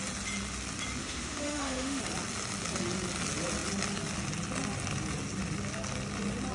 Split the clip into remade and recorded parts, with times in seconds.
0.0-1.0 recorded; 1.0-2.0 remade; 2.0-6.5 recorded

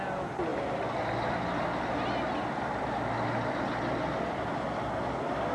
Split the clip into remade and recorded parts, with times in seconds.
0.0-5.5 recorded

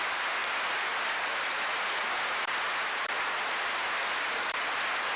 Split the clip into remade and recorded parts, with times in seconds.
0.0-5.2 recorded

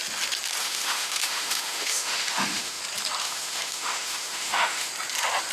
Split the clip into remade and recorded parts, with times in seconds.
0.0-0.6 recorded; 0.6-2.8 remade; 2.8-3.2 recorded; 3.2-4.9 remade; 4.9-5.5 recorded

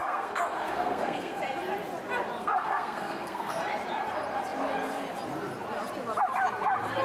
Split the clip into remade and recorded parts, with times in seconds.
0.0-1.4 remade; 1.4-2.4 recorded; 2.4-3.6 remade; 3.6-7.0 recorded

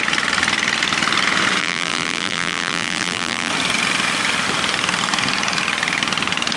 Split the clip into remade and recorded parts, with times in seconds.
0.0-1.6 recorded; 1.6-3.5 remade; 3.5-6.6 recorded

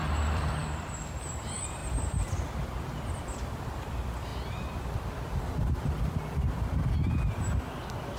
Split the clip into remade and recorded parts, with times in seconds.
0.0-8.2 remade